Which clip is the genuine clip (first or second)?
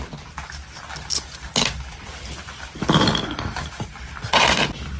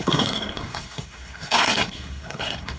first